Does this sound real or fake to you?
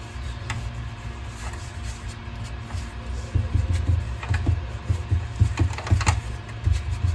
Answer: real